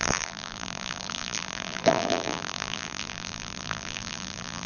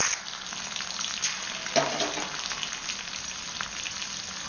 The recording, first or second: second